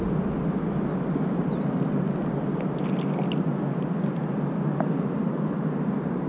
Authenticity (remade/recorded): recorded